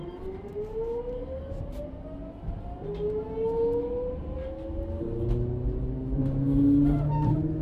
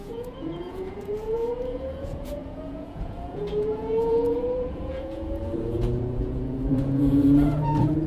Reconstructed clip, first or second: second